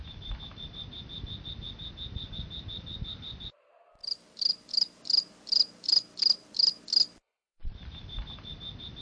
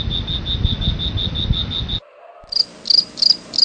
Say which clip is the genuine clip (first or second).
second